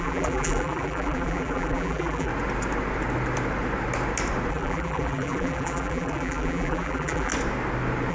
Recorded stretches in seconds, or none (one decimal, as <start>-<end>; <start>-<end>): 2.3-4.5; 7.3-8.1